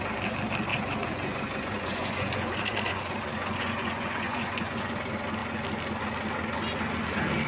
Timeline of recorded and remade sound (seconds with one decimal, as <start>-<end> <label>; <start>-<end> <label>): 0.0-0.7 recorded; 0.7-4.9 remade; 4.9-7.5 recorded